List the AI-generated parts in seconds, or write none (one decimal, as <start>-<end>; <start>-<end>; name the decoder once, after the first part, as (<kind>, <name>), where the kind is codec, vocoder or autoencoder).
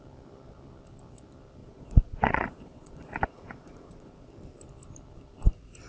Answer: 1.6-4.3 (vocoder, Vocos)